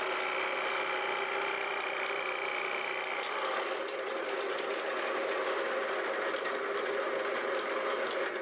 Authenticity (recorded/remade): recorded